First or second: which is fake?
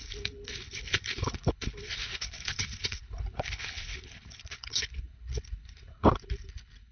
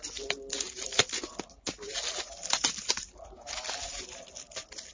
first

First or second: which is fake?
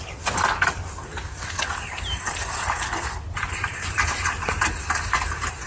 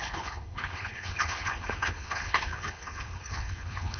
second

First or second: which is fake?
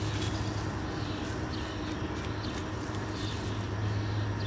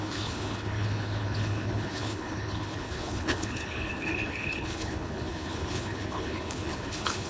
second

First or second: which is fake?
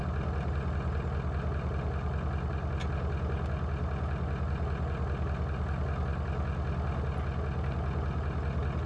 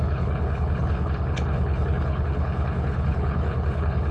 second